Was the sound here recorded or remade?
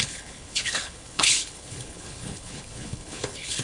remade